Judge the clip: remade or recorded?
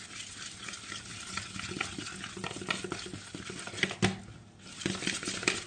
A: recorded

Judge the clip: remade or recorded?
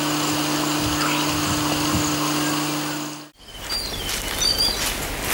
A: recorded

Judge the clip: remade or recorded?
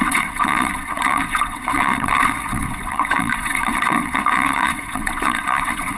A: remade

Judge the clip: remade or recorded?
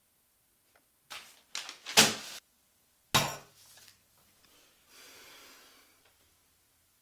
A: recorded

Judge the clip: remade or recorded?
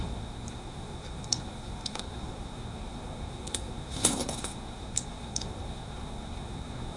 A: remade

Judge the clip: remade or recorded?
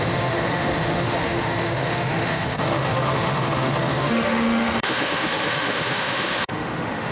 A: remade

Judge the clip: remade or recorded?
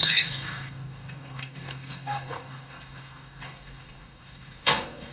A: remade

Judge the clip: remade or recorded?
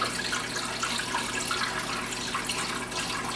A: recorded